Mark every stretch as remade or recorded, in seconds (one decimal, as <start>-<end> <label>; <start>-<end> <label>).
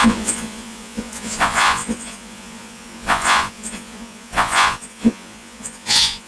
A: 0.0-6.3 remade